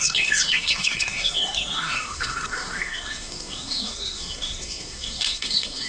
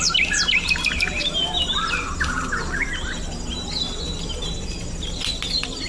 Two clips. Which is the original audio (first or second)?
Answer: second